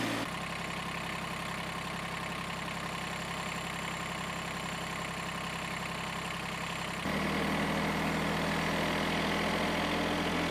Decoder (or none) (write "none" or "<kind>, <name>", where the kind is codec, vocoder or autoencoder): none